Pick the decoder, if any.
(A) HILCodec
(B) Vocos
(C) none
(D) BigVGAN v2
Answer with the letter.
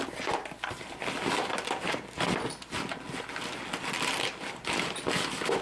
C